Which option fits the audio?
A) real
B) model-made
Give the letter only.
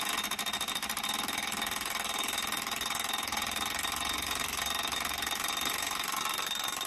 A